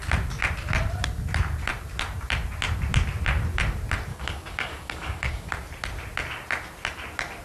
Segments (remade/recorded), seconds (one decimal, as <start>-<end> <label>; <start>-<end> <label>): 0.0-4.1 recorded; 4.1-5.5 remade; 5.5-7.4 recorded